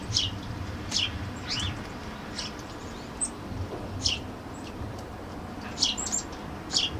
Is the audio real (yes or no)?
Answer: no